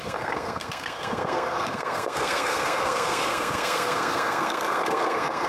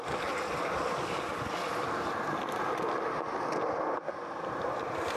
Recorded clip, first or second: second